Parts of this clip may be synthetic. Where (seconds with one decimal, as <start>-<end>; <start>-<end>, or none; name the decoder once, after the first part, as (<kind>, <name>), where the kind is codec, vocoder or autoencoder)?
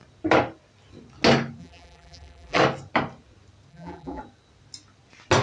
1.6-2.6 (vocoder, BigVGAN v2); 3.7-4.2